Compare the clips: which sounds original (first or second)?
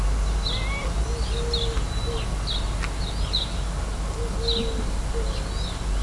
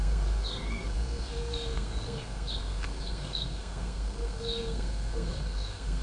first